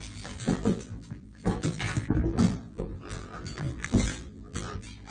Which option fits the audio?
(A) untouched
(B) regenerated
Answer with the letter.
B